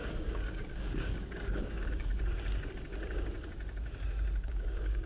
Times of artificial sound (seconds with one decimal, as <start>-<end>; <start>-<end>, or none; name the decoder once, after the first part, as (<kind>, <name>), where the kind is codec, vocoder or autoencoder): 0.0-2.1 (codec, DAC); 4.5-5.1